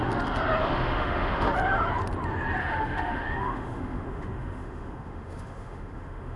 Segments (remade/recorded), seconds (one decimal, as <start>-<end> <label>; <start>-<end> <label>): 0.0-0.6 recorded; 0.6-1.5 remade; 1.5-2.6 recorded; 2.6-6.4 remade